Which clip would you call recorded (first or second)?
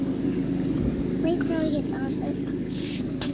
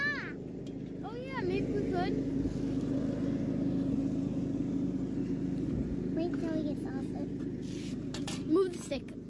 second